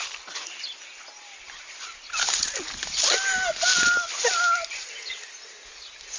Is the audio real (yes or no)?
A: yes